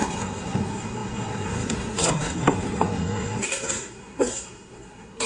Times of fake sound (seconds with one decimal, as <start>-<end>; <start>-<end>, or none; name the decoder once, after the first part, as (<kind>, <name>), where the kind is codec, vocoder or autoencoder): 0.0-5.3 (codec, SNAC)